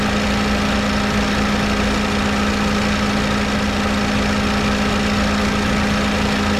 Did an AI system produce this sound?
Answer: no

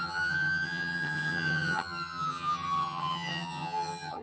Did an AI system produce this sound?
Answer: yes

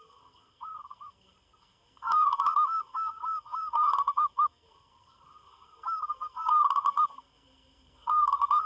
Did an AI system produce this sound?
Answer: yes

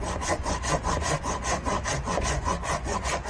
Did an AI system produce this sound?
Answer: yes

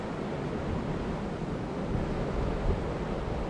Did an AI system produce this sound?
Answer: no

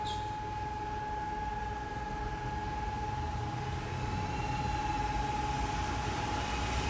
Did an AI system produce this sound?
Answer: no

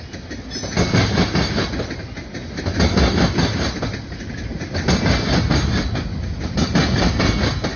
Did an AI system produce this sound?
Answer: no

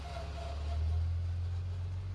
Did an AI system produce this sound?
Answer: no